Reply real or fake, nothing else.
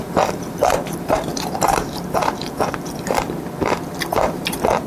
fake